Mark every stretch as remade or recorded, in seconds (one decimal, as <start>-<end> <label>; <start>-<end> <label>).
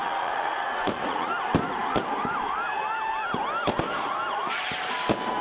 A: 0.0-1.3 remade; 1.3-5.4 recorded